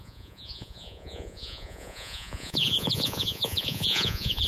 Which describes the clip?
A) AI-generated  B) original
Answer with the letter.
A